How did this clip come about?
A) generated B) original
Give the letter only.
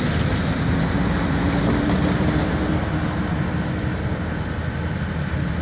B